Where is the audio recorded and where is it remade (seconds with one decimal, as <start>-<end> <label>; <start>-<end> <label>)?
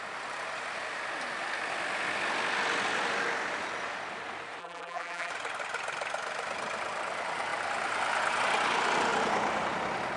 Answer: 0.0-4.6 recorded; 4.6-5.3 remade; 5.3-10.2 recorded